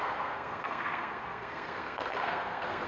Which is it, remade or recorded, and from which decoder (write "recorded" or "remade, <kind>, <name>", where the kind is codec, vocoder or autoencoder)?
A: remade, codec, SNAC